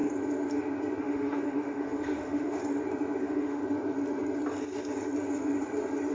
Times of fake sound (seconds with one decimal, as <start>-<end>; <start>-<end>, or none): 1.0-2.6; 3.2-3.6